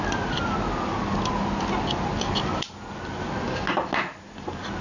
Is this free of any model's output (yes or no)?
yes